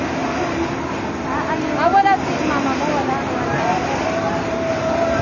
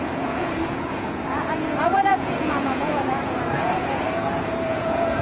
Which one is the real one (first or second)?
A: first